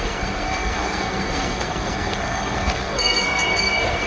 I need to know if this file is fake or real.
fake